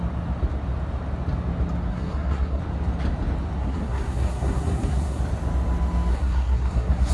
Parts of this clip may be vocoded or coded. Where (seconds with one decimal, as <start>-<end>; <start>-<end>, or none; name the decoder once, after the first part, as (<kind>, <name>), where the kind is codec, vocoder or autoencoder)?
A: 1.9-2.6 (codec, SNAC); 3.6-5.2; 6.1-7.1